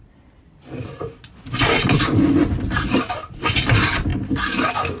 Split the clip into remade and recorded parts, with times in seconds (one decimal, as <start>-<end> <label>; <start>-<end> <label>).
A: 0.0-5.0 recorded